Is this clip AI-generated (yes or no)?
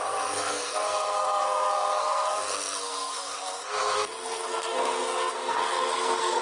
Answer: yes